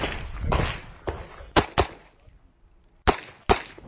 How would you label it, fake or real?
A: real